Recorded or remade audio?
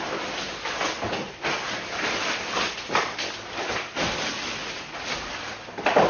recorded